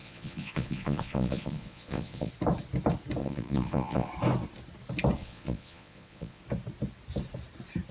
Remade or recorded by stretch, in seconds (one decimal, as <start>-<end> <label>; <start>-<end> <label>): 0.0-2.3 remade; 2.3-3.2 recorded; 3.2-4.1 remade; 4.1-5.2 recorded; 5.2-6.4 remade; 6.4-7.9 recorded